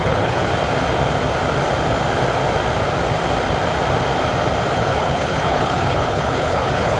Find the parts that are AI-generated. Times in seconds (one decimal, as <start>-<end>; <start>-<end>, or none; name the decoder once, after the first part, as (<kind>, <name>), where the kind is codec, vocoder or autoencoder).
0.0-0.5 (codec, HILCodec); 4.7-7.0